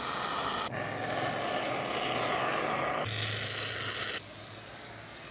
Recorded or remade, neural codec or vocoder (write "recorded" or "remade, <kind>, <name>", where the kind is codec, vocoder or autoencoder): recorded